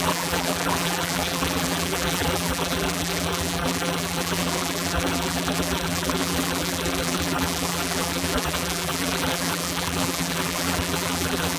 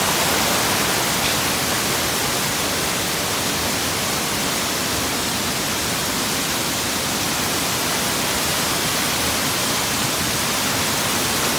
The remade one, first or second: first